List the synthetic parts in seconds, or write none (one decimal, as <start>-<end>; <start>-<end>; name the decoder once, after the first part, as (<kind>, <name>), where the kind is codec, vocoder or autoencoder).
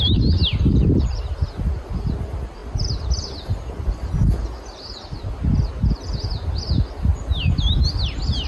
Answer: none